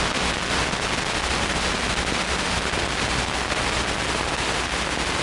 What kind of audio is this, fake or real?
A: real